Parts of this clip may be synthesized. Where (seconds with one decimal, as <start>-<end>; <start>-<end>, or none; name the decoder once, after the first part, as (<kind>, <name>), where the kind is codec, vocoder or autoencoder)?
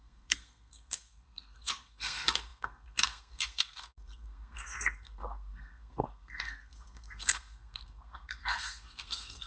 0.0-9.5 (codec, SNAC)